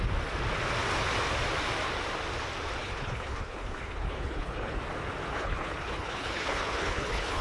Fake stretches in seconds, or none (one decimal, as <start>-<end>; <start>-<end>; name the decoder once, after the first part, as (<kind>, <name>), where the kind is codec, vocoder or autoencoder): 2.8-4.8 (codec, HILCodec); 5.3-7.4

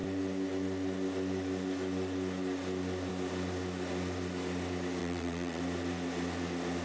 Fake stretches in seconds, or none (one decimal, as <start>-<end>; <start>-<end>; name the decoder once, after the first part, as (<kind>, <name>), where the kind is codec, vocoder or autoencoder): 5.0-5.6 (vocoder, WaveNeXt)

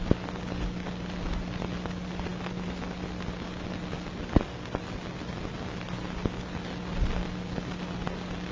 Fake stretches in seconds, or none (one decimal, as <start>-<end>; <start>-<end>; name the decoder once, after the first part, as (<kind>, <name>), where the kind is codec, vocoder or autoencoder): none

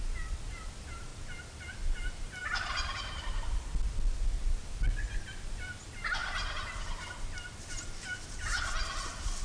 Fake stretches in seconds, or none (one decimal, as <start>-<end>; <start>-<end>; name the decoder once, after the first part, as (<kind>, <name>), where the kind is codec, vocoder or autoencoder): 2.4-3.2 (vocoder, BigVGAN v2)

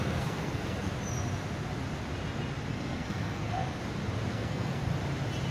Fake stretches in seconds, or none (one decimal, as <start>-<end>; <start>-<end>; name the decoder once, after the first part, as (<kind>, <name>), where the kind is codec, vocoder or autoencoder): 0.0-0.9 (codec, SNAC); 2.7-3.8; 4.3-4.8